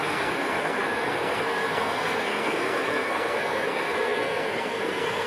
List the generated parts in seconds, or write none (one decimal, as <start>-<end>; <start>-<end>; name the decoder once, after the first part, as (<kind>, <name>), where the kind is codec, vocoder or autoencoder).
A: 0.0-5.3 (codec, SNAC)